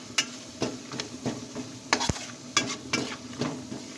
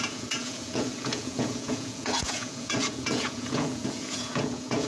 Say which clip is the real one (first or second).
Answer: first